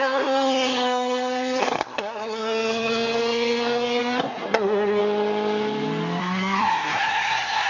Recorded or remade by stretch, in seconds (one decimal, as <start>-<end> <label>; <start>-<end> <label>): 0.0-5.0 remade; 5.0-6.2 recorded; 6.2-7.7 remade